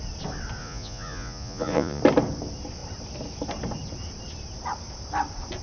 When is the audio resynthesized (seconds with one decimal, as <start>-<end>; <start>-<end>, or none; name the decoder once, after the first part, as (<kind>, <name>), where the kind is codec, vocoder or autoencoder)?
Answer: 0.6-2.0 (vocoder, Vocos)